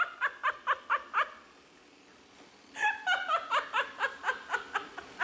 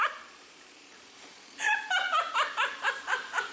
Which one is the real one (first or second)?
first